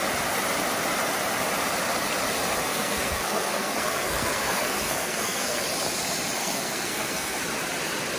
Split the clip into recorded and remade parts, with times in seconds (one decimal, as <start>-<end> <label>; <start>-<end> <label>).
0.0-2.7 recorded; 2.7-5.6 remade; 5.6-6.4 recorded; 6.4-7.4 remade; 7.4-8.2 recorded